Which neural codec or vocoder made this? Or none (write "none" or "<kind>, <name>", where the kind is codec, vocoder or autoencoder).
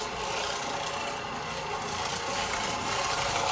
none